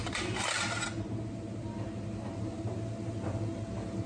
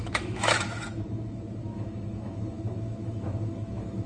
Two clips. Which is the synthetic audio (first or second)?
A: second